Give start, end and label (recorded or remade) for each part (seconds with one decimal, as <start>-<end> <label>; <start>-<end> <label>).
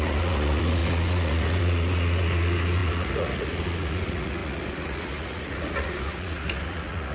0.0-7.1 remade